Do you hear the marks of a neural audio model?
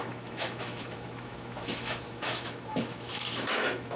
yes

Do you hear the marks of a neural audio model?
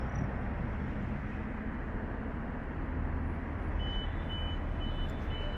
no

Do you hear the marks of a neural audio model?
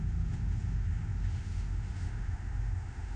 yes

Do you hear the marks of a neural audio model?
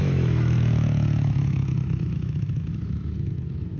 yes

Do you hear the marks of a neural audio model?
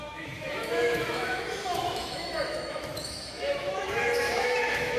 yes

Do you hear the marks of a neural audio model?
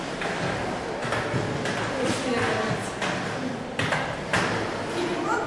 no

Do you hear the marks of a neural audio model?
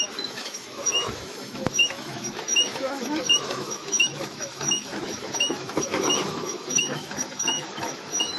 yes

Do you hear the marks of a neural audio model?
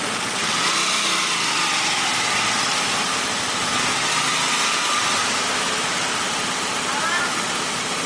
no